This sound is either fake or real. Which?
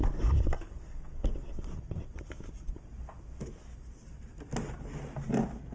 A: real